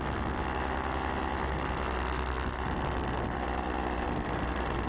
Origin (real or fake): real